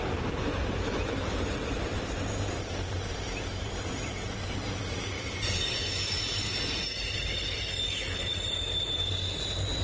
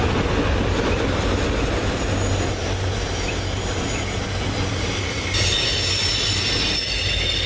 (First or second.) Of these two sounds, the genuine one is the second